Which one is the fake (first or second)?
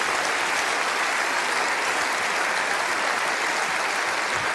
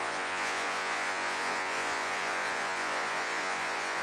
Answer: second